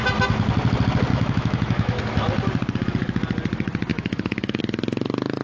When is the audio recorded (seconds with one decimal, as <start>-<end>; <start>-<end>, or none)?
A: 0.0-1.1; 2.0-3.9; 4.6-5.4